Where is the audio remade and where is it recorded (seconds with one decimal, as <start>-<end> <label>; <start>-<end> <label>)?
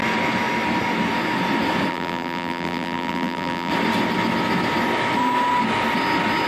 0.0-1.9 recorded; 1.9-3.7 remade; 3.7-6.5 recorded